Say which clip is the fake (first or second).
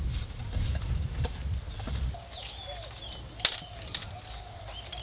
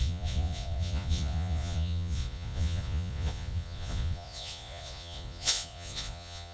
second